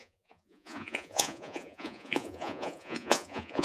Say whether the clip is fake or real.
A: fake